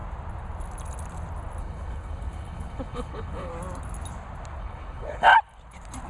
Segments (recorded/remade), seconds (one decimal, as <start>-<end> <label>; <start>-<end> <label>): 0.0-1.6 recorded; 1.6-3.5 remade; 3.5-4.6 recorded; 4.6-5.3 remade; 5.3-6.1 recorded